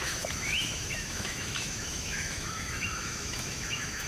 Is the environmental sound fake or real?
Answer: fake